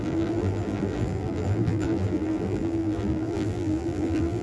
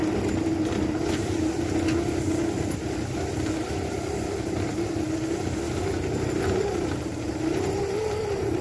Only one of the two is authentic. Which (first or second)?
second